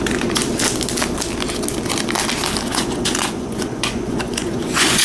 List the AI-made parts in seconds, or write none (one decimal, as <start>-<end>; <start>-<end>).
0.0-0.4; 2.6-5.0